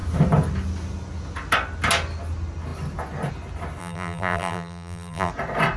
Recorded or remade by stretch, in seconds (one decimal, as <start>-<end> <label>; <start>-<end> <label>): 0.0-3.8 recorded; 3.8-5.3 remade; 5.3-5.8 recorded